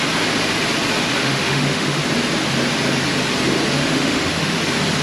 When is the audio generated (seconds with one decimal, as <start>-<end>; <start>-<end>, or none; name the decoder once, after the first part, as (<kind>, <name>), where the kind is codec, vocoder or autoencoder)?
1.2-2.0 (autoencoder, DAC-VAE); 3.8-4.6